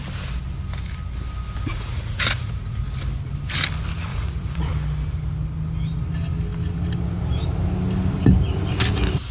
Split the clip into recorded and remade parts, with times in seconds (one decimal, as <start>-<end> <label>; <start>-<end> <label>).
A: 0.0-1.7 recorded; 1.7-2.8 remade; 2.8-4.1 recorded; 4.1-4.6 remade; 4.6-9.3 recorded